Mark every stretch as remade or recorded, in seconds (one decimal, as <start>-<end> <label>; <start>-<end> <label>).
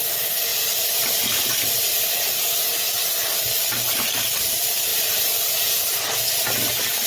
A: 0.0-0.5 recorded; 0.5-2.3 remade; 2.3-4.9 recorded; 4.9-5.8 remade; 5.8-7.1 recorded